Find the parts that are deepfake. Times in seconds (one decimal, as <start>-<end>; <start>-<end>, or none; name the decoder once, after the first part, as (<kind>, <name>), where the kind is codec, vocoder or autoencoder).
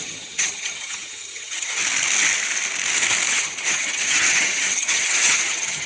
0.0-1.8 (vocoder, HiFi-GAN); 3.3-5.9